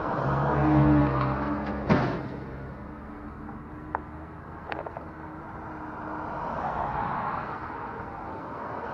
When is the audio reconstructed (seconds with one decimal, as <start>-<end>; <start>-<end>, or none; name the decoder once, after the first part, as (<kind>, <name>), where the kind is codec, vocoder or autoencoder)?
0.0-5.4 (codec, SNAC); 6.5-8.9